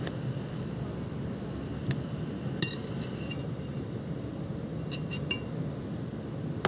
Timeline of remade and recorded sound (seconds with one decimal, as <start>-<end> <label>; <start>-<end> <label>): 0.0-2.8 recorded; 2.8-5.5 remade; 5.5-6.7 recorded